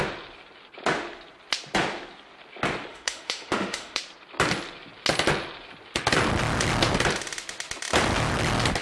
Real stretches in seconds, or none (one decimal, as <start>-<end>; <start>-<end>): 0.0-2.9; 4.0-8.8